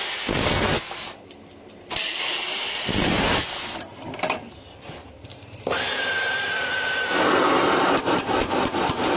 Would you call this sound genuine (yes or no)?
yes